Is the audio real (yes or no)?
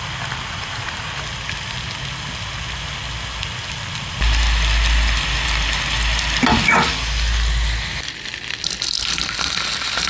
yes